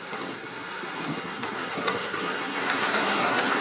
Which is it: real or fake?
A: fake